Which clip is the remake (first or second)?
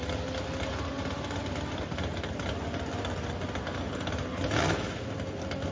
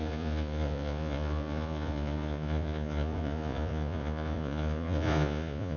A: second